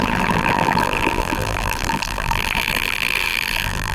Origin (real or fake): fake